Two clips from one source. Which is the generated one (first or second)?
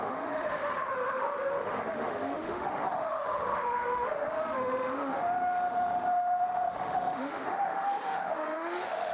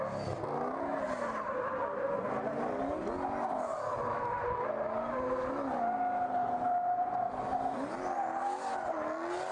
first